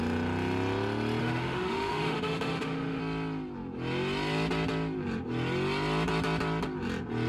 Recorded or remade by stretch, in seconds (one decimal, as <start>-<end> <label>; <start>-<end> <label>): 0.0-1.2 recorded; 1.2-3.0 remade; 3.0-7.3 recorded